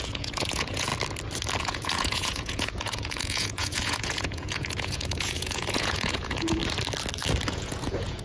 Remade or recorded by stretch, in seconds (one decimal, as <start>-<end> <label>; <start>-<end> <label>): 0.0-0.9 remade; 0.9-1.6 recorded; 1.6-6.6 remade; 6.6-7.5 recorded; 7.5-8.2 remade